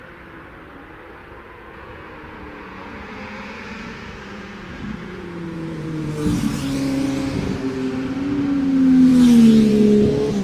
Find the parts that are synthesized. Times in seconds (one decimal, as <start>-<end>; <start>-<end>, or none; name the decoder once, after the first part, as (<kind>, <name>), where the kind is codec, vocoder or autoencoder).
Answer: 1.2-6.1 (vocoder, Vocos)